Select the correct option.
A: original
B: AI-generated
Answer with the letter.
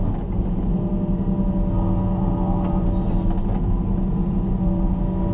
A